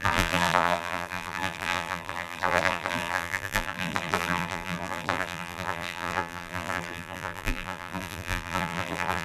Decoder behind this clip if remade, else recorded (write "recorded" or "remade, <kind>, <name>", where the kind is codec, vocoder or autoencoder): remade, vocoder, BigVGAN v2